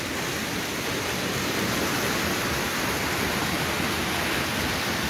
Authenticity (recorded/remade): recorded